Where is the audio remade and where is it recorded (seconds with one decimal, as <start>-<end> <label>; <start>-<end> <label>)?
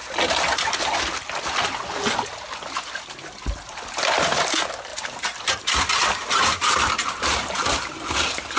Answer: 0.0-4.9 recorded; 4.9-8.6 remade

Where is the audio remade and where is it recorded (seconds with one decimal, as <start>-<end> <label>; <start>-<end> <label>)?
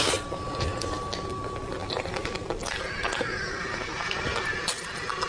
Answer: 0.0-5.3 recorded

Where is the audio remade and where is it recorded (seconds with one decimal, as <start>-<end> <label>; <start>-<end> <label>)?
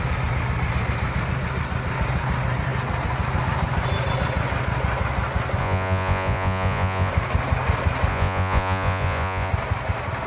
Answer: 0.0-5.6 recorded; 5.6-7.1 remade; 7.1-8.1 recorded; 8.1-9.5 remade; 9.5-10.3 recorded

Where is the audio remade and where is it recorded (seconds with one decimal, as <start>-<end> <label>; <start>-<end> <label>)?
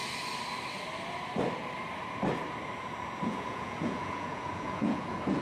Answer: 0.0-3.2 recorded; 3.2-5.4 remade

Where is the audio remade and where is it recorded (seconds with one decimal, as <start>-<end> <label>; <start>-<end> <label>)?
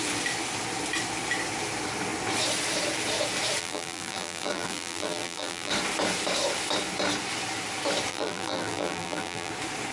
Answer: 0.0-3.6 recorded; 3.6-5.7 remade; 5.7-8.1 recorded; 8.1-9.5 remade; 9.5-9.9 recorded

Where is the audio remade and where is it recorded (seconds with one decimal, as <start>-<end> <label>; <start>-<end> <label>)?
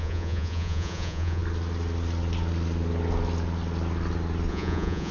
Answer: 0.0-1.4 remade; 1.4-4.5 recorded; 4.5-5.1 remade